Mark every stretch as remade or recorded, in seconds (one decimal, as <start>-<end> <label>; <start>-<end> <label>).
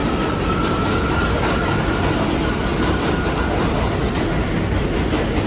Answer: 0.0-5.5 recorded